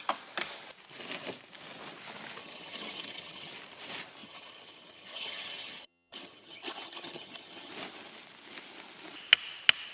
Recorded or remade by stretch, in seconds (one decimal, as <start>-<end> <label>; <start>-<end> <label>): 0.0-2.4 recorded; 2.4-3.5 remade; 3.5-4.2 recorded; 4.2-7.7 remade; 7.7-9.9 recorded